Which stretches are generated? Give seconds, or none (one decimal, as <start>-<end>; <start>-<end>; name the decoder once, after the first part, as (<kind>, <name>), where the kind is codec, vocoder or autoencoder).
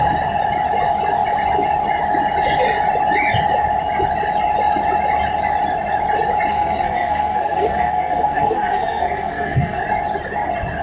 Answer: 6.5-9.8 (codec, SNAC)